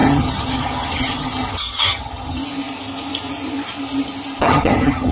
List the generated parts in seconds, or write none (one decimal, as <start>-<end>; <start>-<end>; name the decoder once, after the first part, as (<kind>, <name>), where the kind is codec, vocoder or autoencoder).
0.0-2.4 (vocoder, HiFi-GAN); 4.4-5.1